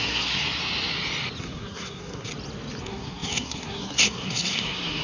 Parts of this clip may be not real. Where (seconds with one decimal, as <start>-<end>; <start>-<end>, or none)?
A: 0.0-0.6; 1.4-2.3; 2.8-5.0